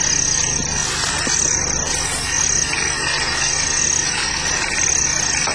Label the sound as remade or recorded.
recorded